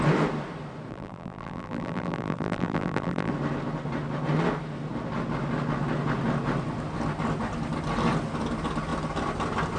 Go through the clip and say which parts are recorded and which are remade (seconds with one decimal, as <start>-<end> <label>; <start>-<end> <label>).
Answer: 0.0-0.9 recorded; 0.9-3.3 remade; 3.3-9.8 recorded